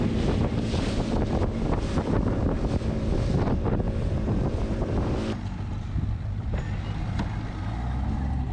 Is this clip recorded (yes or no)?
yes